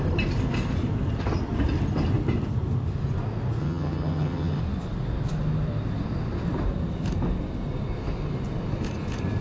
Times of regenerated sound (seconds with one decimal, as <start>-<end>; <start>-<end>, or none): 3.6-4.6